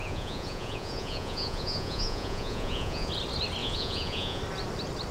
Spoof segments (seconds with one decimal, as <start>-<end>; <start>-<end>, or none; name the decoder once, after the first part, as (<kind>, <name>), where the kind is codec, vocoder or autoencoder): 0.0-3.1 (vocoder, Vocos); 3.6-4.4